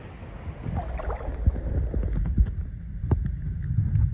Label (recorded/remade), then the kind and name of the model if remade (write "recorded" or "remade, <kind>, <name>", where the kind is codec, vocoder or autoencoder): recorded